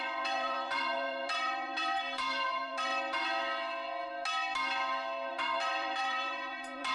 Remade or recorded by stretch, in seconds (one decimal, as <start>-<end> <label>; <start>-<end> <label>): 0.0-2.9 remade; 2.9-5.3 recorded; 5.3-6.9 remade